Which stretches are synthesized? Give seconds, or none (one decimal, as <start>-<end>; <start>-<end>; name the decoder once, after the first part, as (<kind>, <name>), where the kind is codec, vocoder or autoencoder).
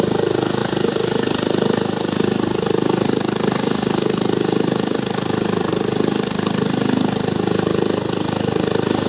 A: 0.6-5.7 (vocoder, BigVGAN v2)